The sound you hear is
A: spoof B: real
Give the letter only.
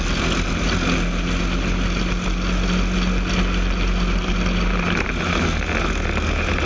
B